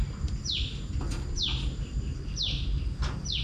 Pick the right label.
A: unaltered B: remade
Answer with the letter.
A